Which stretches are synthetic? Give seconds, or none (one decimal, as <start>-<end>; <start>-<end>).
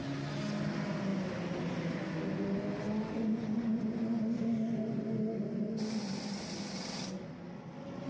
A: none